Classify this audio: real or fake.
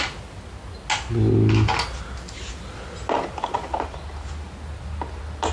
real